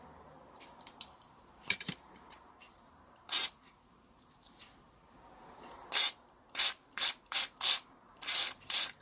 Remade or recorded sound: remade